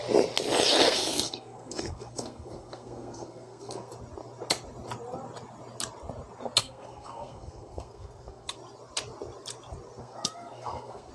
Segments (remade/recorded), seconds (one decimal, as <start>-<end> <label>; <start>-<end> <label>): 0.0-0.8 recorded; 0.8-3.9 remade; 3.9-6.6 recorded; 6.6-8.6 remade; 8.6-10.0 recorded; 10.0-11.1 remade